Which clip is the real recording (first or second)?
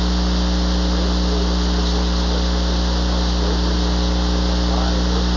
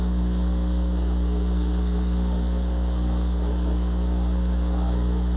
first